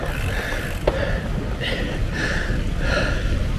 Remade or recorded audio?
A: recorded